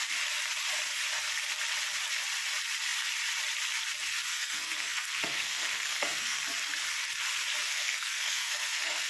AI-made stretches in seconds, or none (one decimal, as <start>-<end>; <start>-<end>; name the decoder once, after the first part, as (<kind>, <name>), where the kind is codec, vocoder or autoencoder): 4.3-6.4 (codec, SNAC); 7.6-9.1